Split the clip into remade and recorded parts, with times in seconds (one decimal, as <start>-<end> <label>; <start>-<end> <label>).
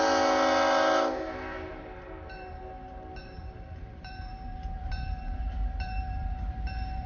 0.0-1.7 recorded; 1.7-2.6 remade; 2.6-3.2 recorded; 3.2-7.1 remade